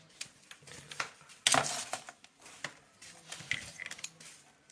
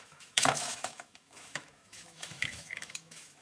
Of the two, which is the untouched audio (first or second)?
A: first